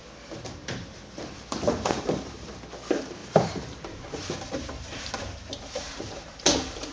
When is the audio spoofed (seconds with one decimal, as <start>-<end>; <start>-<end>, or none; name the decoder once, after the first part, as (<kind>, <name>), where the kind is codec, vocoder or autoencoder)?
0.6-2.6 (vocoder, BigVGAN v2); 3.2-6.4